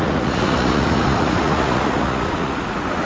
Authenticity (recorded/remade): remade